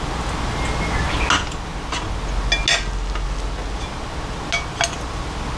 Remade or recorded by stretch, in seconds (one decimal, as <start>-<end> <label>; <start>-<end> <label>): 0.0-5.6 recorded